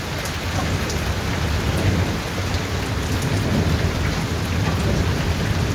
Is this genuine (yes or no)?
yes